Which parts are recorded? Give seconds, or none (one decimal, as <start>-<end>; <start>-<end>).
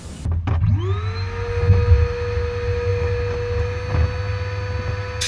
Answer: 0.0-5.3